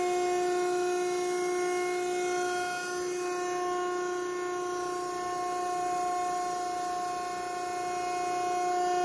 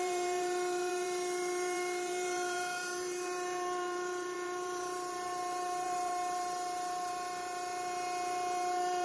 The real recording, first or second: first